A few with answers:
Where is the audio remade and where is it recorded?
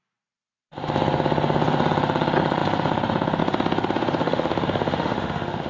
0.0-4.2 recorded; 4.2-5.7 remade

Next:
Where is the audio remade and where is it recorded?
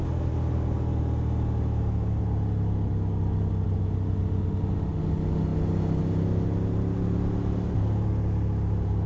0.0-9.1 recorded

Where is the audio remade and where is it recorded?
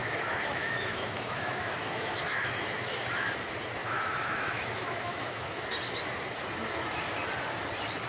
0.0-3.3 remade; 3.3-3.8 recorded; 3.8-5.6 remade; 5.6-8.1 recorded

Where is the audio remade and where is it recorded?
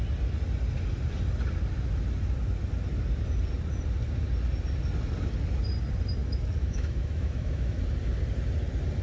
0.0-6.2 recorded; 6.2-7.8 remade; 7.8-9.0 recorded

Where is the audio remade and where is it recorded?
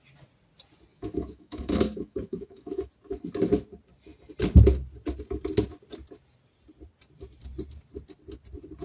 0.0-0.9 recorded; 0.9-2.9 remade; 2.9-8.8 recorded